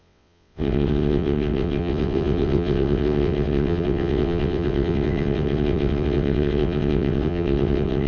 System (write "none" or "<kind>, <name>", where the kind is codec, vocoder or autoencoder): vocoder, WaveNeXt